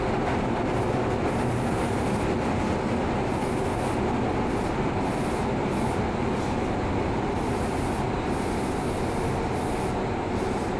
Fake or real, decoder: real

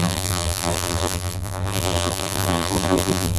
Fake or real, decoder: fake, vocoder, BigVGAN v2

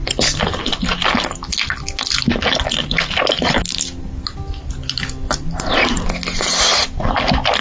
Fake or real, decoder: real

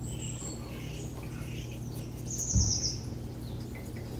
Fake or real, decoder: real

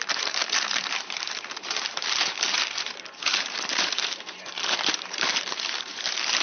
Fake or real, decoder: fake, vocoder, BigVGAN v2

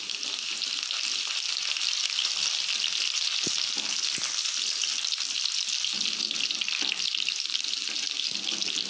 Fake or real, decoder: real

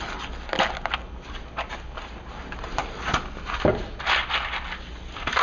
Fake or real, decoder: real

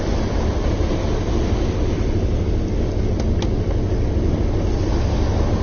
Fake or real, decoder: real